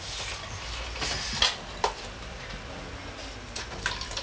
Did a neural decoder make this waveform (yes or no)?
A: no